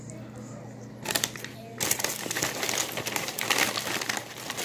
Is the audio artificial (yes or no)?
no